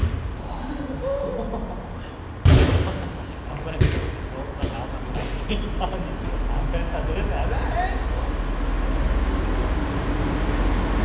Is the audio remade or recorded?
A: recorded